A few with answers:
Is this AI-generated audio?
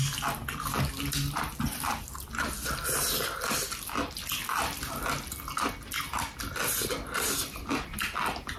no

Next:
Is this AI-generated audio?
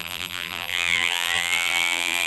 yes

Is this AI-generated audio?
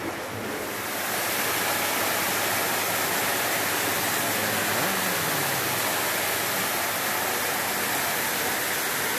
no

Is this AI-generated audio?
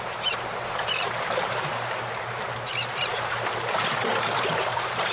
yes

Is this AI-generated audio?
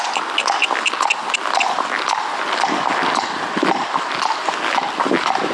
no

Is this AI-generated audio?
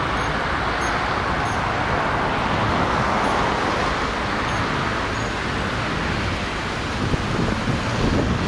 no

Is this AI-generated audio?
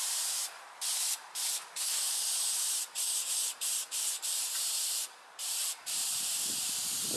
yes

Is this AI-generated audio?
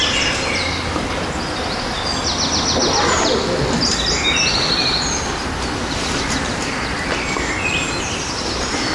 no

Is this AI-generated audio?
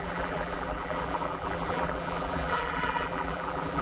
yes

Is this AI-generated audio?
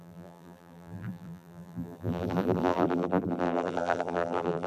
yes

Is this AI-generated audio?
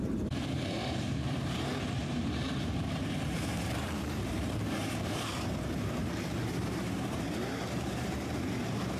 yes